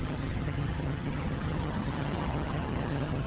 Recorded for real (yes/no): no